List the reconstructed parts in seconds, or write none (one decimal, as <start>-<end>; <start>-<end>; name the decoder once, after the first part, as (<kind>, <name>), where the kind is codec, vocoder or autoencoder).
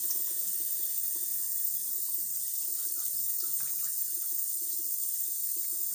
2.7-3.3 (vocoder, BigVGAN v2)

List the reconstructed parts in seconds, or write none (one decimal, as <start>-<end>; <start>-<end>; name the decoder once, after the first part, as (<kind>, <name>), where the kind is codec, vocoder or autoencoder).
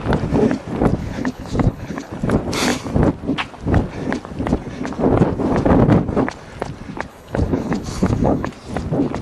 1.0-2.1 (codec, HILCodec); 7.1-8.5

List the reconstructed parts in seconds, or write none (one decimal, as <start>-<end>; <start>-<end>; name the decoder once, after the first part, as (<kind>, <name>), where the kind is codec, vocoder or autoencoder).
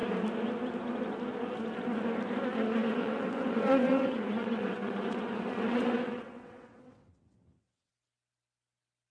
2.8-7.9 (vocoder, WaveNeXt)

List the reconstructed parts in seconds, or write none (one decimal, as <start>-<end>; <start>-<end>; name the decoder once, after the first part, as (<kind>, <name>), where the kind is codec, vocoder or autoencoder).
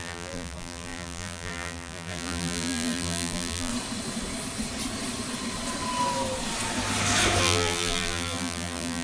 0.0-3.7 (vocoder, BigVGAN v2); 7.4-9.0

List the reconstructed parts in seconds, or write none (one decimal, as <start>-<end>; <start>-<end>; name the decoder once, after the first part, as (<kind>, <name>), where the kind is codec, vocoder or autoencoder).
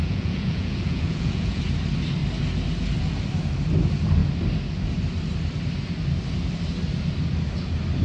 0.0-1.6 (vocoder, Vocos)